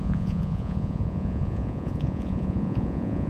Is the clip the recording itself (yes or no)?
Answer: no